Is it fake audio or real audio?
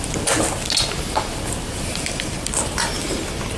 real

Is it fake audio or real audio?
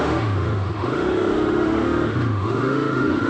fake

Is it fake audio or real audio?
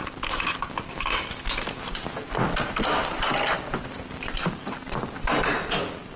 real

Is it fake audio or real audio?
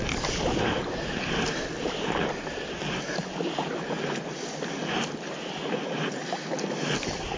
real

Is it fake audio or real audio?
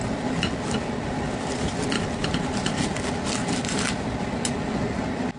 real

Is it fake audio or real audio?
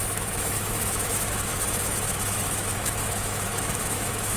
fake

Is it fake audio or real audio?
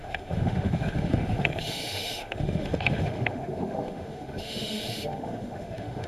fake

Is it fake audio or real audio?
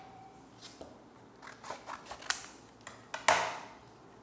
real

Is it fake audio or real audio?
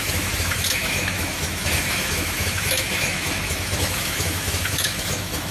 fake